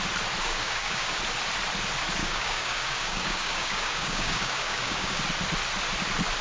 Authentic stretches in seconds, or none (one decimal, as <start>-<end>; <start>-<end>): 0.0-0.4; 1.2-2.2; 5.2-6.4